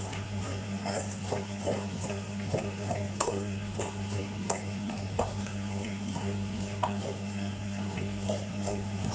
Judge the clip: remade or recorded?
remade